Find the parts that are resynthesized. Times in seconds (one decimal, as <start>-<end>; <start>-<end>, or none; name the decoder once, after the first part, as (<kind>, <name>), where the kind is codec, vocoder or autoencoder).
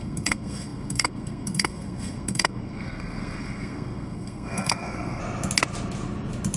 0.0-5.2 (codec, SNAC)